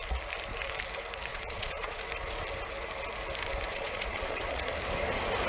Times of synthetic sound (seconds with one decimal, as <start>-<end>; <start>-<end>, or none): 1.3-2.0; 3.7-4.6